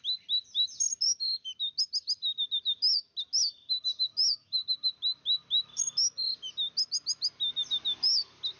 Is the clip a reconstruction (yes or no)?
no